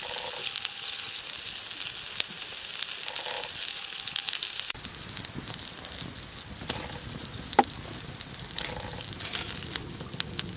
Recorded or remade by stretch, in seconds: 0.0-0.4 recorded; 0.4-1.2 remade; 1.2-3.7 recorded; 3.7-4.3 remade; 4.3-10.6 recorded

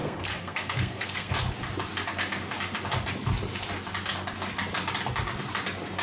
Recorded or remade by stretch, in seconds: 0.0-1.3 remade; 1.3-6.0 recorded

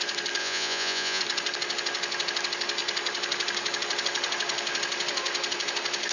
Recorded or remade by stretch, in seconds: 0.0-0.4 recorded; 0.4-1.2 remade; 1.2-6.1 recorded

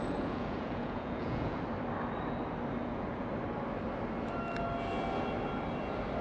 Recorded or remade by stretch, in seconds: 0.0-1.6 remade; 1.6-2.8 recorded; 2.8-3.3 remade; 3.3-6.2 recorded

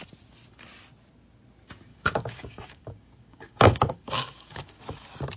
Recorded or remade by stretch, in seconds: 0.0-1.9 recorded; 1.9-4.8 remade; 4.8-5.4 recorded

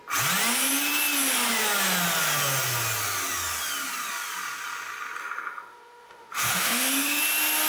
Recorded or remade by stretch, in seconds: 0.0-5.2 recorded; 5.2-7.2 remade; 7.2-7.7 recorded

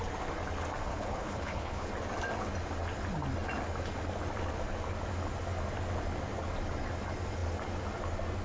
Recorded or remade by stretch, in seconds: 0.0-0.9 recorded; 0.9-1.9 remade; 1.9-8.4 recorded

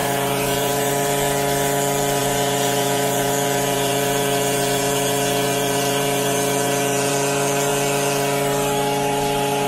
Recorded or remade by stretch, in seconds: 0.0-0.9 remade; 0.9-2.2 recorded; 2.2-7.1 remade; 7.1-9.7 recorded